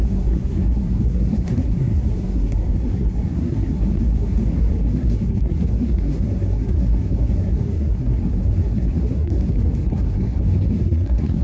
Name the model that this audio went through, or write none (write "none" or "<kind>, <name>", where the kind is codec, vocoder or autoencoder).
codec, SNAC